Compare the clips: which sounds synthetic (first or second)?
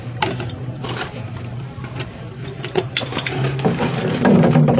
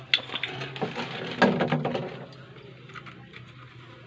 first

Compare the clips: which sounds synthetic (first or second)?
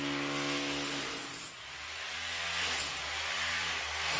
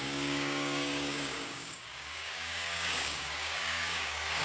second